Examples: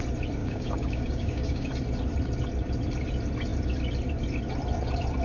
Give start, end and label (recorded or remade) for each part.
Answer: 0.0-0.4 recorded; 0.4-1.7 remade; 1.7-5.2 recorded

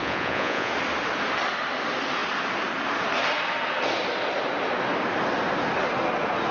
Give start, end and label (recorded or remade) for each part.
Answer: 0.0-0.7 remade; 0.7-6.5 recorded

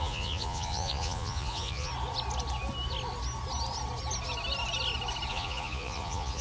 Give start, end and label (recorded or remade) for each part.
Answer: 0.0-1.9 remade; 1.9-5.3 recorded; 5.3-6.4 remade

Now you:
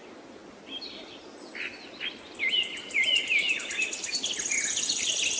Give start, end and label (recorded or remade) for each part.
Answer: 0.0-5.4 recorded